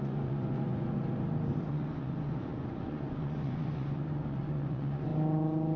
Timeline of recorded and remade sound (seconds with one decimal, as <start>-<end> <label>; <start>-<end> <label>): 0.0-1.0 remade; 1.0-1.7 recorded; 1.7-5.1 remade; 5.1-5.8 recorded

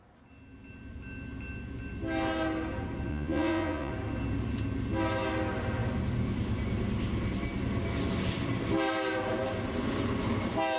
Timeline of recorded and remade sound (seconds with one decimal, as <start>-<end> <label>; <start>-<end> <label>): 0.0-3.1 recorded; 3.1-3.9 remade; 3.9-10.8 recorded

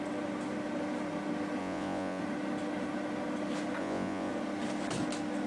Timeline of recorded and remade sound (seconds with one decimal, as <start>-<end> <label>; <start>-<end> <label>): 0.0-1.6 recorded; 1.6-2.2 remade; 2.2-3.8 recorded; 3.8-4.3 remade; 4.3-5.5 recorded